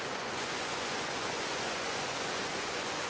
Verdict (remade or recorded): remade